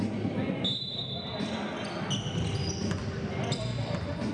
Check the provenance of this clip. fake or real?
real